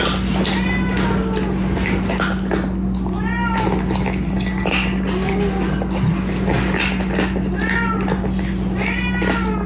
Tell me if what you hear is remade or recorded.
recorded